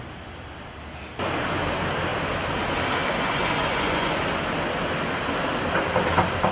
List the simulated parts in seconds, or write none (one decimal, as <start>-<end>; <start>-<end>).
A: 3.1-4.2